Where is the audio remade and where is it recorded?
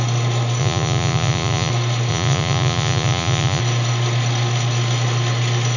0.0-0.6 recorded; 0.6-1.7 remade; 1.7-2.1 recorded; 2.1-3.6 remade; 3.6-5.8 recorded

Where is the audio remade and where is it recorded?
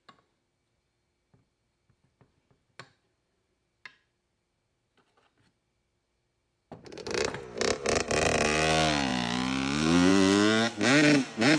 0.0-11.6 recorded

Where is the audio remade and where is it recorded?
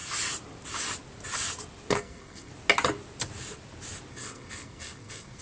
0.0-1.9 recorded; 1.9-2.5 remade; 2.5-4.1 recorded; 4.1-5.4 remade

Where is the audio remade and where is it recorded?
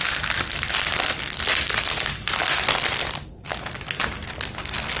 0.0-5.0 recorded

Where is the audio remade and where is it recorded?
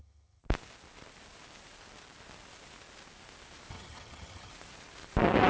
0.0-0.4 remade; 0.4-3.7 recorded; 3.7-4.5 remade; 4.5-5.5 recorded